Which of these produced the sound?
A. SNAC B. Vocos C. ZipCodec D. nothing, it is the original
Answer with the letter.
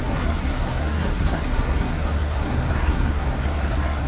A